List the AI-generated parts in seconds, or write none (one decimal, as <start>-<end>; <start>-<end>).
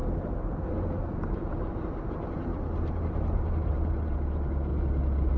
0.0-4.7